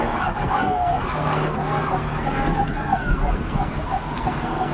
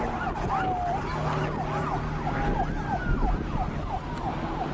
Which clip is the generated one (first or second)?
first